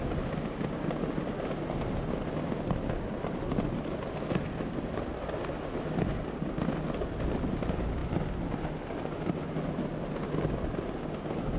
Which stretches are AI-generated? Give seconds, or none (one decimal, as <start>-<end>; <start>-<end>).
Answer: none